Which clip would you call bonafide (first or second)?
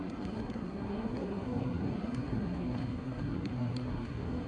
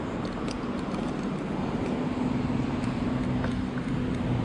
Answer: second